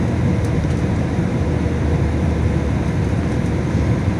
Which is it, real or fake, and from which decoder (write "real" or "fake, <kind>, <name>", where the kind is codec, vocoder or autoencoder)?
real